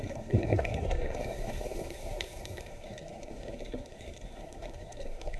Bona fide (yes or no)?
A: no